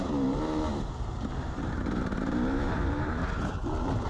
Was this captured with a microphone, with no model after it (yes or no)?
no